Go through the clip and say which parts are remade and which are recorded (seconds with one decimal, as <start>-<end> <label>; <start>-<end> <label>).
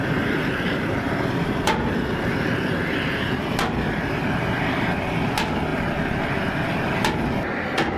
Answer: 0.0-8.0 recorded